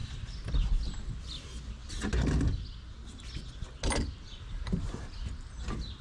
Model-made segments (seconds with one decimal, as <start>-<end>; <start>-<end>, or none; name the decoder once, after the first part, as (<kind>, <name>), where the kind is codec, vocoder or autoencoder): none